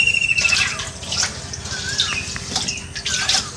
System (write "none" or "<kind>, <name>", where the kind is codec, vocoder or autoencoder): none